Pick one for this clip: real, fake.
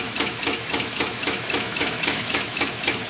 fake